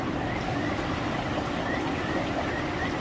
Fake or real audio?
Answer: real